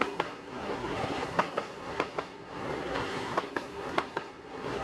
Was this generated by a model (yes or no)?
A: yes